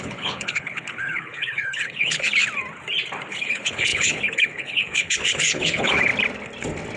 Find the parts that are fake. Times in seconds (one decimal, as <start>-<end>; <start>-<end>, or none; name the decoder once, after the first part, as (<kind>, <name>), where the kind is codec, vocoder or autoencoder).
0.0-2.4 (codec, HILCodec); 3.3-6.1